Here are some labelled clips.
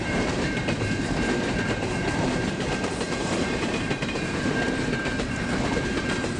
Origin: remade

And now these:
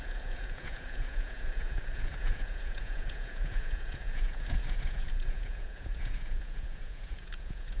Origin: remade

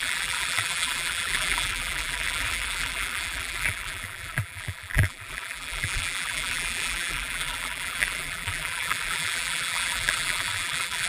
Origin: remade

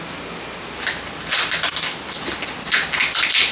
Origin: recorded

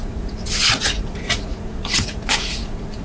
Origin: remade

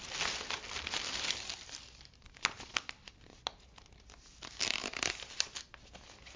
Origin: recorded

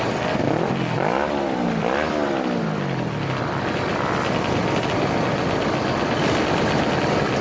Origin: recorded